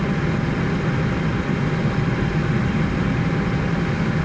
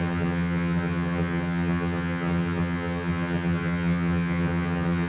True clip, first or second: first